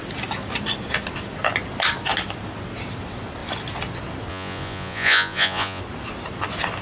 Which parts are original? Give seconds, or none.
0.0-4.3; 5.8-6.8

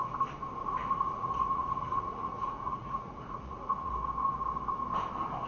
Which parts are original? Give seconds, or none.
0.0-0.6; 3.9-5.5

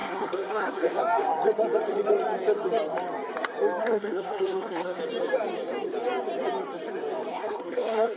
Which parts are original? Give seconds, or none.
1.0-3.8; 5.0-7.3